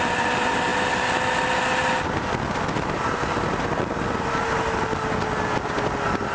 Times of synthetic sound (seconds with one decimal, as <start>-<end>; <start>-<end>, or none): none